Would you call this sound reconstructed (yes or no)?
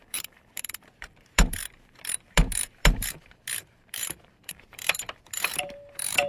yes